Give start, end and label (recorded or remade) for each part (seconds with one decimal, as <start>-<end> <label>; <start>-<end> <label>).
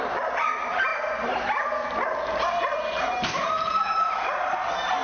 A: 0.0-5.0 recorded